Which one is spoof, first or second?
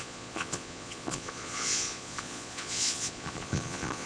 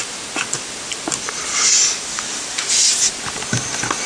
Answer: first